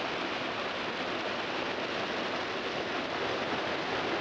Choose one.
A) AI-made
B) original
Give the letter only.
B